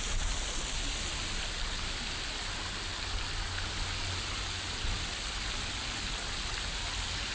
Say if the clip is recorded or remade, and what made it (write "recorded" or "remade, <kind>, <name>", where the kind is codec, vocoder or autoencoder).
recorded